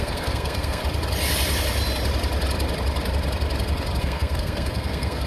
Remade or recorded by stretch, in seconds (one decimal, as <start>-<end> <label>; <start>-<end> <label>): 0.0-0.8 remade; 0.8-4.0 recorded; 4.0-5.3 remade